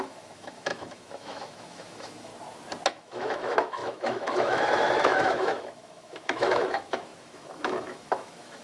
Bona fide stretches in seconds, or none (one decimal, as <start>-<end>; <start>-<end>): 2.3-2.9